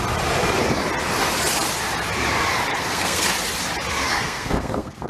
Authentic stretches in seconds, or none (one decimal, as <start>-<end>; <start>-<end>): 0.0-2.7; 3.3-4.1

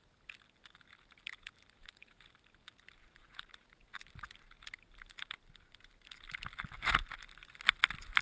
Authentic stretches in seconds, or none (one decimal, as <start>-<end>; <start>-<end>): 0.0-1.8; 2.3-3.0; 4.0-8.2

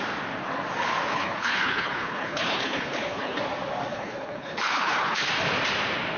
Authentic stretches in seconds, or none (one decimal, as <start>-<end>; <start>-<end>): 0.0-1.1; 3.4-3.9; 5.3-6.2

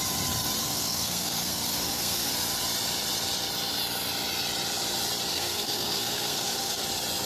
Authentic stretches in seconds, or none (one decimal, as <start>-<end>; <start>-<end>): 0.0-0.6; 2.3-5.3; 6.8-7.3

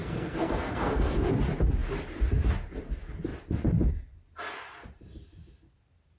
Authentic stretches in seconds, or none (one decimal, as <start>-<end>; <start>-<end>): 1.3-6.2

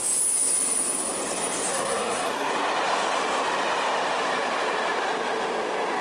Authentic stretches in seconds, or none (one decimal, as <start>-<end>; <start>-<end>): 0.0-1.7; 2.5-6.0

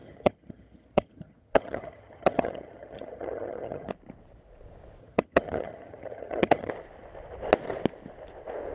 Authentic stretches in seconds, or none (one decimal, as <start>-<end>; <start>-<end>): 3.9-5.0; 6.7-8.7

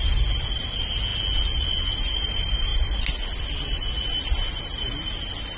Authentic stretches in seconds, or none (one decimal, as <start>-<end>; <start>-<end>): 0.0-5.6